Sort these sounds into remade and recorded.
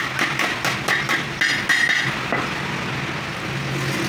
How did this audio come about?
recorded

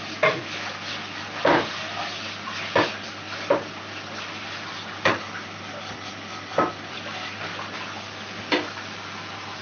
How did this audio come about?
recorded